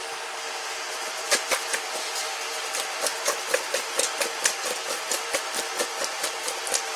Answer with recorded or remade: remade